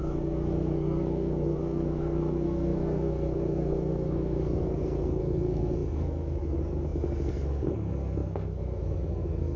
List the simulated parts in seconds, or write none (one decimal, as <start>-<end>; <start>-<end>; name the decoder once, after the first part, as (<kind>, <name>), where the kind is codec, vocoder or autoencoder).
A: 0.0-9.6 (codec, SNAC)